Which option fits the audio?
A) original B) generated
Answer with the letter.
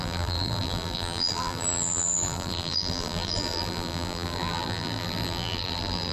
B